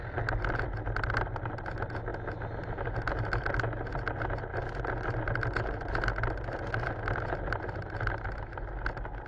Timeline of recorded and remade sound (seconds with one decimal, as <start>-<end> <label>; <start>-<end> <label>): 0.0-9.3 recorded